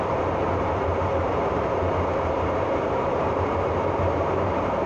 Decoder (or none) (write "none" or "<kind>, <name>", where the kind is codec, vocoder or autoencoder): vocoder, BigVGAN v2